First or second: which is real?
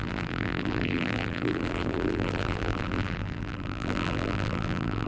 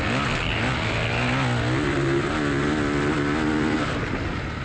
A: second